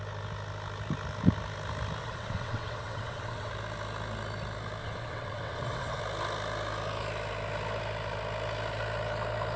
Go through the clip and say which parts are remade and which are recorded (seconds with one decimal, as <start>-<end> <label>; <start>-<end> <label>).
0.0-2.0 recorded; 2.0-3.5 remade; 3.5-4.8 recorded; 4.8-6.0 remade; 6.0-9.6 recorded